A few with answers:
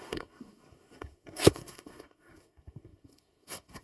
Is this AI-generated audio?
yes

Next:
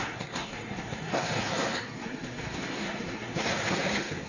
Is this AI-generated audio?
yes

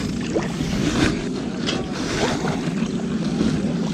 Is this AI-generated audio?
no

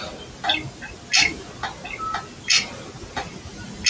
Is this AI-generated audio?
no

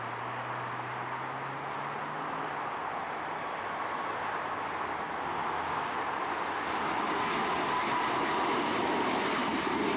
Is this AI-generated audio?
no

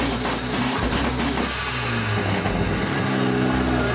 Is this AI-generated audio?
no